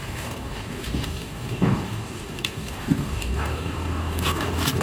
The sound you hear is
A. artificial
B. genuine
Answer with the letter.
A